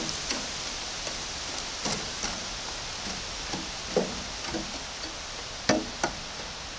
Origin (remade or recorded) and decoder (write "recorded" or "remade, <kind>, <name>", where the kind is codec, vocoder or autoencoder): recorded